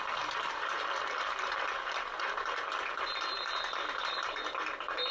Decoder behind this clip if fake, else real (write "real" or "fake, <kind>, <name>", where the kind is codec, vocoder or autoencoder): fake, vocoder, BigVGAN v2